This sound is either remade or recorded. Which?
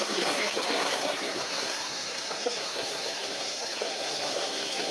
remade